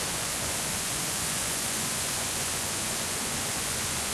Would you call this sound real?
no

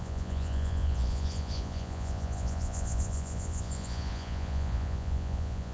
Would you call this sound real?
no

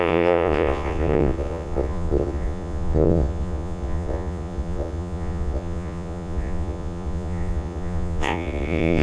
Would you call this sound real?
no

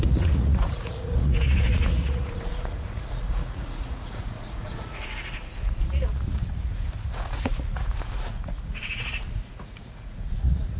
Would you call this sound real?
no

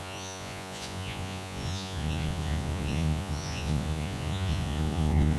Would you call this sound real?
no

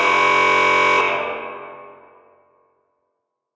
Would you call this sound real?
yes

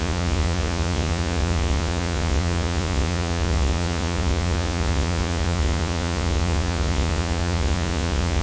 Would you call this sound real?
no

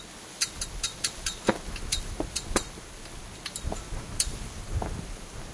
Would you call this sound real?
yes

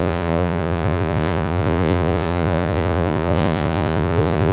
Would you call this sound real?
no